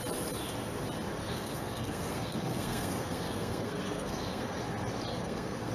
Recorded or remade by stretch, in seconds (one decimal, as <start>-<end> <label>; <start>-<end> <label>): 0.0-1.2 recorded; 1.2-4.6 remade; 4.6-5.1 recorded; 5.1-5.7 remade